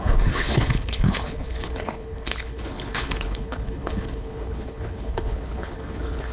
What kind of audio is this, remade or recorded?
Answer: remade